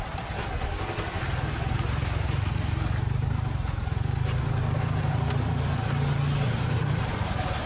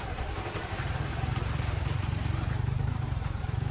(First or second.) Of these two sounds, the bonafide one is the first